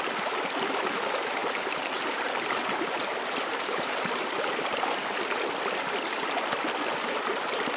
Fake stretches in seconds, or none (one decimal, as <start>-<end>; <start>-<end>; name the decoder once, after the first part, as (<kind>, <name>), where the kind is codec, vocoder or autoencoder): 1.4-5.2 (vocoder, BigVGAN v2)